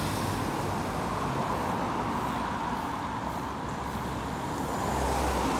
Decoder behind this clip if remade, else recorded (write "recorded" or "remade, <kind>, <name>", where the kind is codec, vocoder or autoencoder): recorded